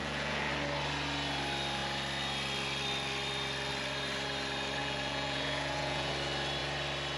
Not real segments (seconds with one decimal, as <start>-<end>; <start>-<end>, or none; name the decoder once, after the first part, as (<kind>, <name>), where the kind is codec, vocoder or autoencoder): 0.0-0.5 (vocoder, Vocos); 4.8-6.1